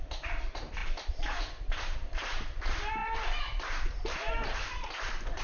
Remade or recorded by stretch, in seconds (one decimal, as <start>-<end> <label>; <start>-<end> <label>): 0.0-5.4 remade